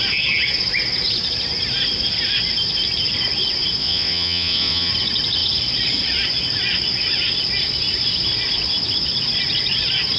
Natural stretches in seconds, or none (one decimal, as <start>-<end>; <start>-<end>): 0.0-3.8; 4.9-10.2